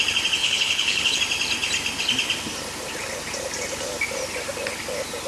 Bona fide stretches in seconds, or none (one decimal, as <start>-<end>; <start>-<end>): 0.0-0.4; 1.2-5.3